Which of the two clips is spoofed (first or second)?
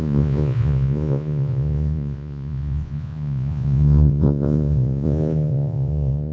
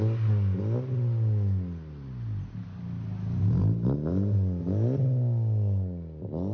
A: first